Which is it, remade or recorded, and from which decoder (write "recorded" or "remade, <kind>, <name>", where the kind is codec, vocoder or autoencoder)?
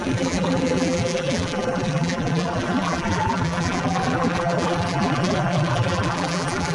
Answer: remade, vocoder, BigVGAN v2